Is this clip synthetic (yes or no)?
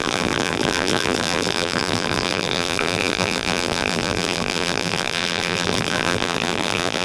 yes